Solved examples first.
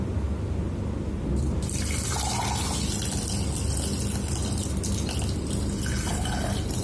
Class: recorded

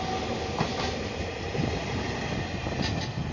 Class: recorded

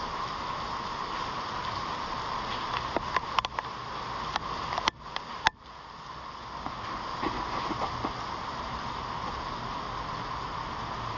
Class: recorded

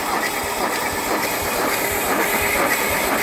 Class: remade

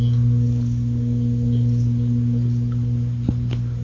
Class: recorded